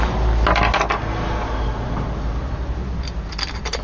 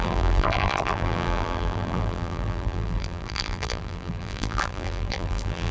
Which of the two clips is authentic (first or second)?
first